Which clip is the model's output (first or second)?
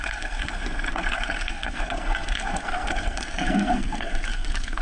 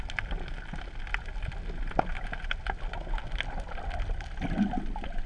first